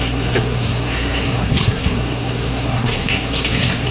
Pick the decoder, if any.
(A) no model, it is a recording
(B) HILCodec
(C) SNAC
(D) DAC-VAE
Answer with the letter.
C